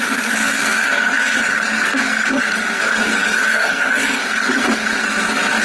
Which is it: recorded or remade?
remade